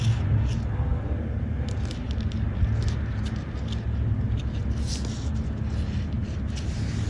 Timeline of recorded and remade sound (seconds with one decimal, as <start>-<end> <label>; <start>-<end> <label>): 0.0-7.1 recorded